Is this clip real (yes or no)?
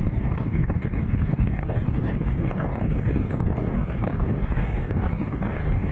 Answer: no